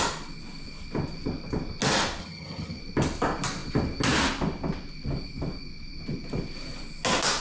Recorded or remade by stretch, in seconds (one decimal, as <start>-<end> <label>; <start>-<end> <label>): 0.0-2.2 recorded; 2.2-2.8 remade; 2.8-7.4 recorded